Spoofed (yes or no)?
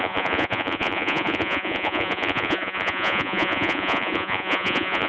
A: yes